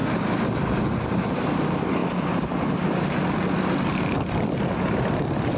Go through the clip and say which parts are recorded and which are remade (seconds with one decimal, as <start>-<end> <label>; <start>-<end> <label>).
0.0-5.6 recorded